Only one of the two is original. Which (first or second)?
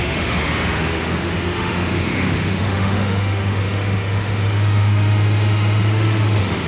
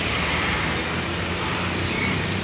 second